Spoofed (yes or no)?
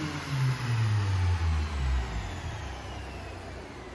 no